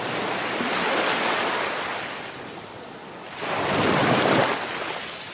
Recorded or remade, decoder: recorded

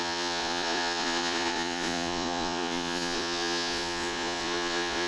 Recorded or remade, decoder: remade, vocoder, Vocos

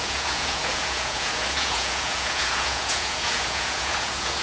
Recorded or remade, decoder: remade, vocoder, Vocos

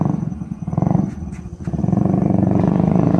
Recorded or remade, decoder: remade, vocoder, Vocos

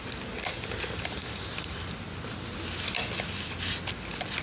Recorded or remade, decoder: recorded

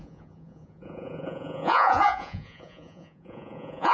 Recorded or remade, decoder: remade, vocoder, Vocos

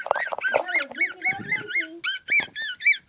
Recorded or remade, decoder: recorded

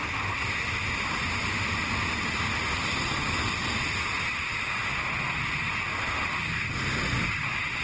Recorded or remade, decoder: recorded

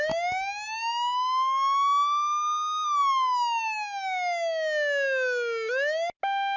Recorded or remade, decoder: recorded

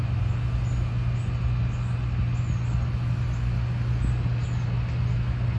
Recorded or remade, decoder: recorded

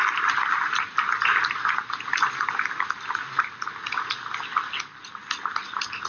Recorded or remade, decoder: recorded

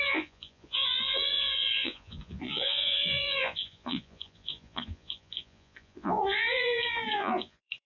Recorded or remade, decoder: remade, vocoder, Vocos